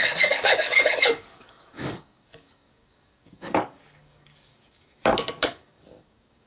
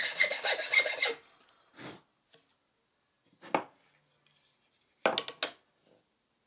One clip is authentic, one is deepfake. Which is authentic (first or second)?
second